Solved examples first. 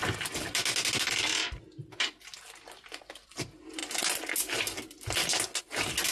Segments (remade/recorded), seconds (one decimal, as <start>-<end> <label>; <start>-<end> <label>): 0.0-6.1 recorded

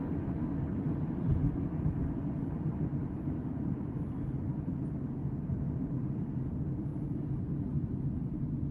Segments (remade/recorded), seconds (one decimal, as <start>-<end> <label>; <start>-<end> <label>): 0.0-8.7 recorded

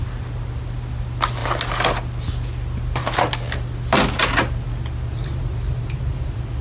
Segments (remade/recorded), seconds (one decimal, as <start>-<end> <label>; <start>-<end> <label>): 0.0-6.6 recorded

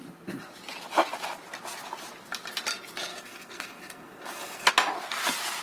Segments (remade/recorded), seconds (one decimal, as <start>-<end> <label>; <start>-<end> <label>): 0.0-3.1 recorded; 3.1-4.7 remade; 4.7-5.6 recorded